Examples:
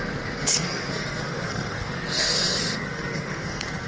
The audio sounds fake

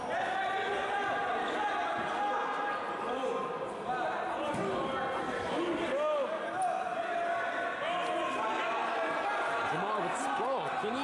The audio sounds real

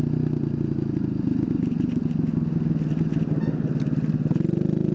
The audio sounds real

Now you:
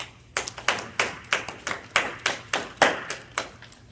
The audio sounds real